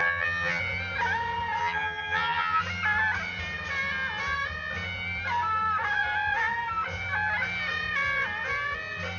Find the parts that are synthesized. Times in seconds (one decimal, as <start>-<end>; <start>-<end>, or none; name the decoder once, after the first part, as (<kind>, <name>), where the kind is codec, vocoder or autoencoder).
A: 0.0-0.6 (vocoder, HiFi-GAN); 1.6-2.6